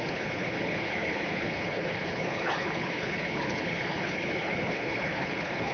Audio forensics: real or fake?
fake